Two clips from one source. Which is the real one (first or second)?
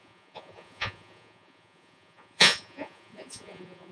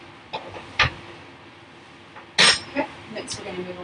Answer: second